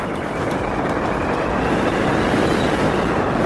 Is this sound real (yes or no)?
yes